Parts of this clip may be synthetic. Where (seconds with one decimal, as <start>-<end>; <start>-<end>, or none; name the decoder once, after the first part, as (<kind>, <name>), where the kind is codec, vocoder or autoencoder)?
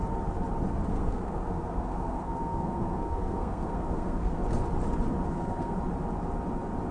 0.9-4.4 (codec, SNAC); 5.3-5.8